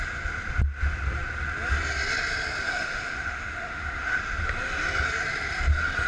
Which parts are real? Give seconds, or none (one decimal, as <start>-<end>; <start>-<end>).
0.0-2.6; 4.2-6.1